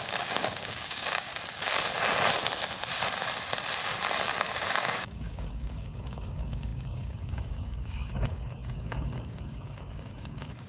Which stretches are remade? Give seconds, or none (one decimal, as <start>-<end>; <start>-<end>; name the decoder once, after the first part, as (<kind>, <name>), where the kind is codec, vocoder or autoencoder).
0.0-1.3 (codec, DAC); 4.5-10.7